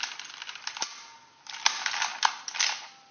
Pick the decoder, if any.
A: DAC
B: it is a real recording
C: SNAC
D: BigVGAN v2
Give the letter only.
B